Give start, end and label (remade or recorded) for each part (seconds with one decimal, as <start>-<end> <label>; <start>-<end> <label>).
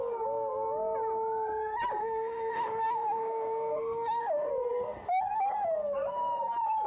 0.0-2.0 recorded; 2.0-4.5 remade; 4.5-6.9 recorded